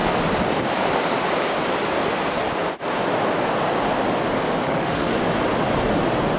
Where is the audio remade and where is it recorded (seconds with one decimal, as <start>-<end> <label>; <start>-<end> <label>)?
0.0-4.6 recorded; 4.6-5.1 remade; 5.1-6.4 recorded